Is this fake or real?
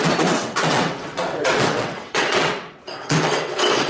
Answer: fake